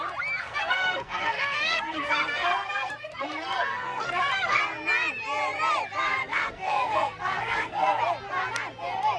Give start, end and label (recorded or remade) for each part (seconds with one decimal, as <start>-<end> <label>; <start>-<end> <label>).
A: 0.0-0.4 recorded; 0.4-4.6 remade; 4.6-6.2 recorded; 6.2-8.0 remade; 8.0-9.2 recorded